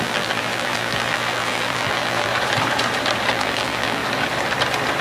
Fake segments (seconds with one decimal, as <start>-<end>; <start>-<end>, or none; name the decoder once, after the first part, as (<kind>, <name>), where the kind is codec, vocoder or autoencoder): 0.0-2.3 (vocoder, BigVGAN v2); 3.3-4.0